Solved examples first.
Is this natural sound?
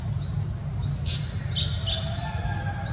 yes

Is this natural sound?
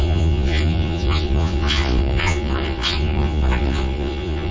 no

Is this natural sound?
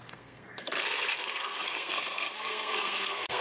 no